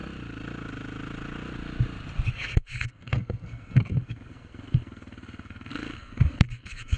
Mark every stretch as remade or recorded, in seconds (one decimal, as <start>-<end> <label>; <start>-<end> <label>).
0.0-2.3 recorded; 2.3-7.0 remade